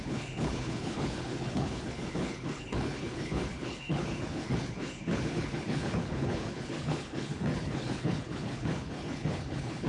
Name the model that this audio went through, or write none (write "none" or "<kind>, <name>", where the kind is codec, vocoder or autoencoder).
codec, HILCodec